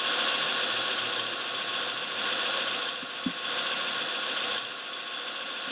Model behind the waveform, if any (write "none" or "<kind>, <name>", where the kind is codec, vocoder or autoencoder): none